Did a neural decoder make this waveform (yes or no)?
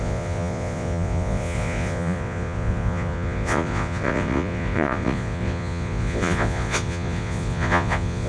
yes